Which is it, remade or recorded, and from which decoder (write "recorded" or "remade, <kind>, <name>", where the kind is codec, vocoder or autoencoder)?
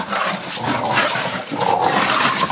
remade, vocoder, BigVGAN v2